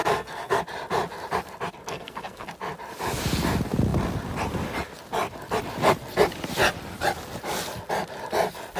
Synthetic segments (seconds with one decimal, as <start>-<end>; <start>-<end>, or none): 0.0-0.6; 1.9-2.5